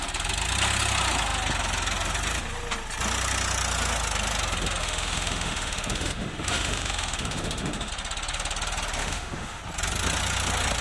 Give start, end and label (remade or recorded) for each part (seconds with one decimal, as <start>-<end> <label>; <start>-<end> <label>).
0.0-4.8 recorded; 4.8-7.9 remade; 7.9-9.0 recorded; 9.0-9.6 remade; 9.6-10.8 recorded